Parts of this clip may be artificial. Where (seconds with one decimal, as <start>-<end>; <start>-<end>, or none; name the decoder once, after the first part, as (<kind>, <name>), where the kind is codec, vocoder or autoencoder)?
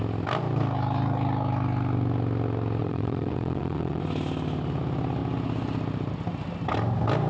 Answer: 2.8-4.0 (vocoder, WaveNeXt)